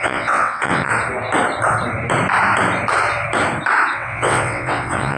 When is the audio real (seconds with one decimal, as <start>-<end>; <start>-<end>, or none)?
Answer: 0.9-3.9